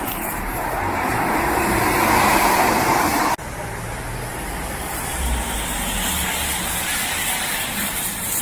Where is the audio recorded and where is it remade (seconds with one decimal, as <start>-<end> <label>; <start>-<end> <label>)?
0.0-3.1 remade; 3.1-4.3 recorded; 4.3-5.1 remade; 5.1-7.4 recorded; 7.4-8.4 remade